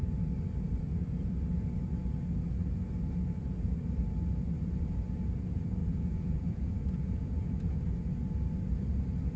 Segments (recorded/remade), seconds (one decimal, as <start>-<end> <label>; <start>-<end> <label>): 0.0-5.8 recorded; 5.8-7.8 remade; 7.8-9.4 recorded